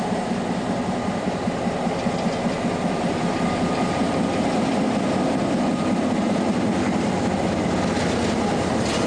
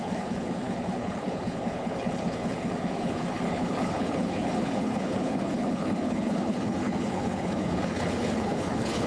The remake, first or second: second